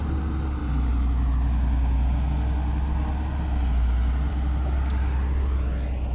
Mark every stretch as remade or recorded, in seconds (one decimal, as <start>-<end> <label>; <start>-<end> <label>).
0.0-6.1 recorded

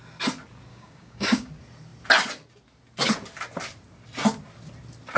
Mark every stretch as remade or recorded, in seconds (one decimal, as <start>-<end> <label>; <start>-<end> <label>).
0.0-0.7 recorded; 0.7-1.5 remade; 1.5-5.2 recorded

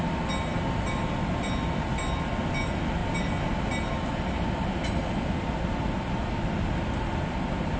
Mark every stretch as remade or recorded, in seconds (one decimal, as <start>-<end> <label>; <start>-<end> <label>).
0.0-7.8 recorded

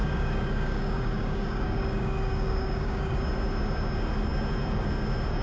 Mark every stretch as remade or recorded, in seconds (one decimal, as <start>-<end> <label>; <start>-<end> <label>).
0.0-3.2 remade; 3.2-5.4 recorded

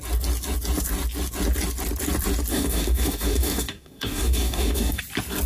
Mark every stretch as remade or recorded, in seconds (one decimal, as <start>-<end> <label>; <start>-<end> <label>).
0.0-2.5 recorded; 2.5-5.0 remade; 5.0-5.5 recorded